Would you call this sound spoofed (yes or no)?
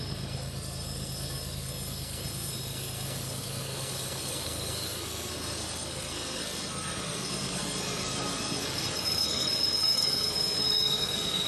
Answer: yes